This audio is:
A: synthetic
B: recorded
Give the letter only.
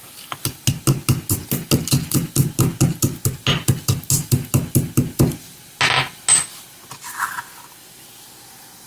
B